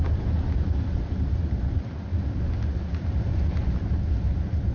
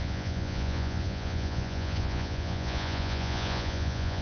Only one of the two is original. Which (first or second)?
first